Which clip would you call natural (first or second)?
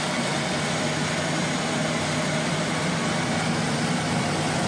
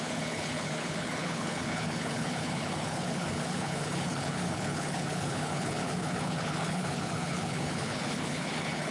first